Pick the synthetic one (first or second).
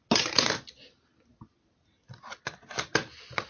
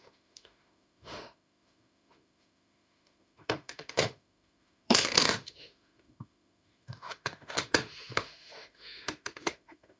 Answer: second